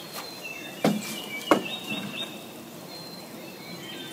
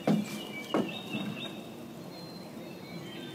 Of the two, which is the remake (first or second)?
first